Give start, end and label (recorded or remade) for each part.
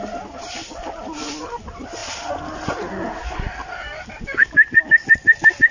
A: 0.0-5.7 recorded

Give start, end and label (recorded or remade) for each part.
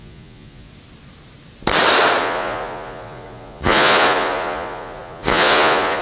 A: 0.0-0.7 remade; 0.7-2.2 recorded; 2.2-6.0 remade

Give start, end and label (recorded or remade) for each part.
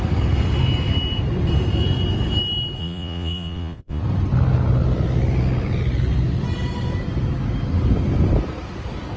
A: 0.0-2.8 recorded; 2.8-4.0 remade; 4.0-9.2 recorded